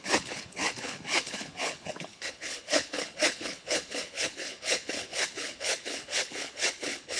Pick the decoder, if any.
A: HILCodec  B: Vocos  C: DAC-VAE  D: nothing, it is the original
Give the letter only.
A